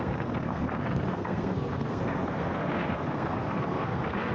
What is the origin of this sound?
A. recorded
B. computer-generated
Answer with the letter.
B